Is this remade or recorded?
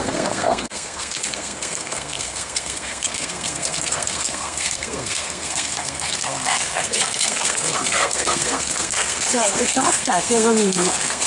remade